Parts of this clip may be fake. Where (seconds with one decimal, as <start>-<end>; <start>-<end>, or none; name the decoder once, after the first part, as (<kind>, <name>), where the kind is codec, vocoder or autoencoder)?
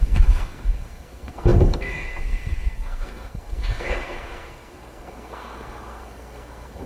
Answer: 0.0-6.9 (codec, SNAC)